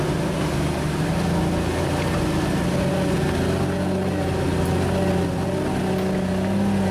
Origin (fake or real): real